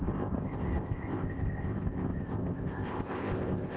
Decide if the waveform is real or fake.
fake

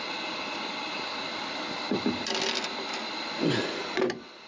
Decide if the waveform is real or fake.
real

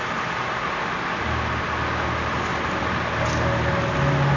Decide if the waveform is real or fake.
real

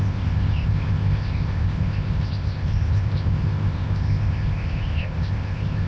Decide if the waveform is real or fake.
fake